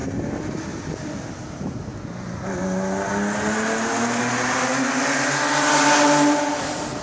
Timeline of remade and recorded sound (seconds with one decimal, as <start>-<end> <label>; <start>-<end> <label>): 0.0-7.0 recorded